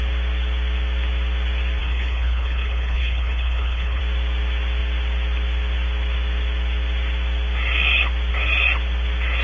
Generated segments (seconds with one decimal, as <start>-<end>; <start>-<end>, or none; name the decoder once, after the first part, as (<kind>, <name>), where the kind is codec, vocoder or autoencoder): 1.8-4.0 (codec, HILCodec)